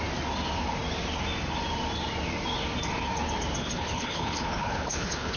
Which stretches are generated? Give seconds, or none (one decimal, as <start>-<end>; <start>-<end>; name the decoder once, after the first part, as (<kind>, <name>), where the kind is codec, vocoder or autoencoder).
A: 3.6-5.4 (codec, HILCodec)